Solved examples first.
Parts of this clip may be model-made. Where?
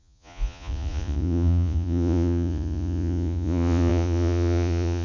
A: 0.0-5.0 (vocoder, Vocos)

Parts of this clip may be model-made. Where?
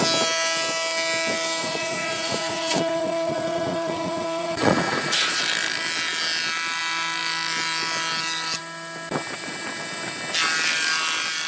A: 1.6-5.4 (vocoder, Vocos)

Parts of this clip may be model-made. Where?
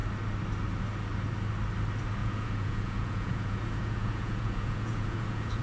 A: 2.2-5.6 (vocoder, Vocos)